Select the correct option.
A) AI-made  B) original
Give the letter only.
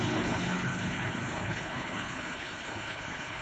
A